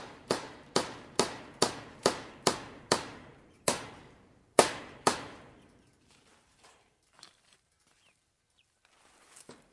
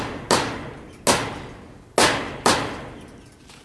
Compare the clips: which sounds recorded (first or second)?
second